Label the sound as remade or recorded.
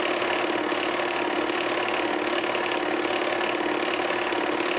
recorded